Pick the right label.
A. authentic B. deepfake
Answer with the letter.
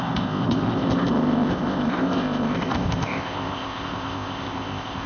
B